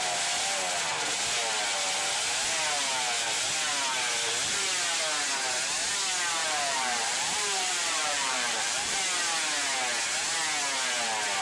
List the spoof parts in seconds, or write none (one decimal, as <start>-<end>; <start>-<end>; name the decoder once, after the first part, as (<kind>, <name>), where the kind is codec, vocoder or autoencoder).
6.4-9.0 (vocoder, BigVGAN v2)